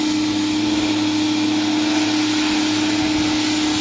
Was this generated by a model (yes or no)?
no